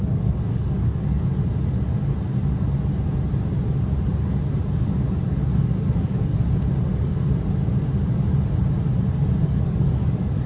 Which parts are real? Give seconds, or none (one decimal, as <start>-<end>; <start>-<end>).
1.3-4.7; 6.3-9.4